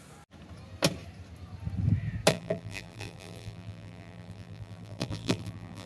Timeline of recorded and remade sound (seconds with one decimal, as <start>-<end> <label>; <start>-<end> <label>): 0.0-2.3 recorded; 2.3-5.9 remade